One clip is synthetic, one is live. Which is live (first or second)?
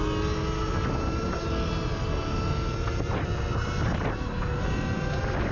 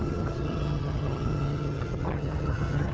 first